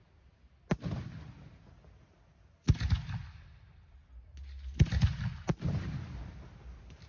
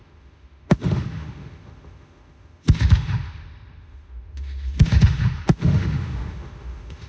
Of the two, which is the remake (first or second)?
second